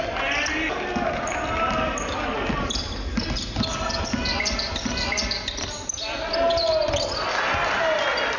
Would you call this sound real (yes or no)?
yes